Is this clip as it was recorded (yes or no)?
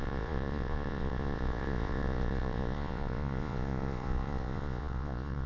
no